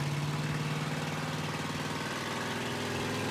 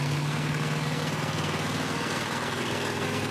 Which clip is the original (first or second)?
first